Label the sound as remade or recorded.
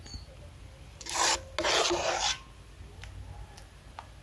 recorded